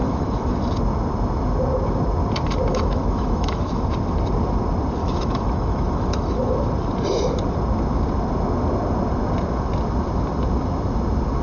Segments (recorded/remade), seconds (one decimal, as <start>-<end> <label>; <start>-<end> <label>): 0.0-0.6 remade; 0.6-2.7 recorded; 2.7-3.6 remade; 3.6-5.0 recorded; 5.0-6.5 remade; 6.5-11.4 recorded